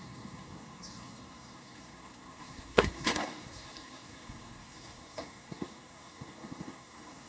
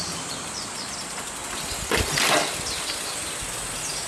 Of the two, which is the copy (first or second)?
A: first